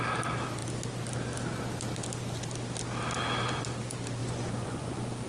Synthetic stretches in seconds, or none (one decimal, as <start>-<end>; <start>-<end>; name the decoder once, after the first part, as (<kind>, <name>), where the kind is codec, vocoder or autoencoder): 4.2-5.3 (vocoder, Vocos)